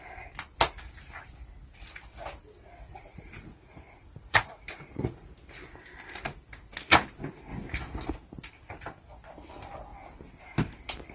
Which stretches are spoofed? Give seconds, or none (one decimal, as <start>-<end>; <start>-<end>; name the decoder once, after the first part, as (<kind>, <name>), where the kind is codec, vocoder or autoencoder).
2.9-5.3 (vocoder, Vocos)